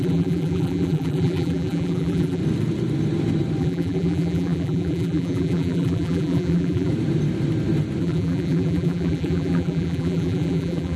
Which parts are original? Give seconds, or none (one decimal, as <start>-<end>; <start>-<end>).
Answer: 2.4-3.6; 6.9-8.0